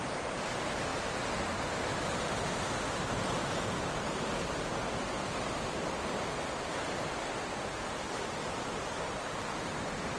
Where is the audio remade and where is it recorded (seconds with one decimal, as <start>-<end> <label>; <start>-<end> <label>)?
0.0-0.9 remade; 0.9-1.7 recorded; 1.7-10.2 remade